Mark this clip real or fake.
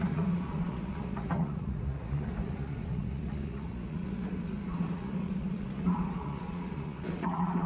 fake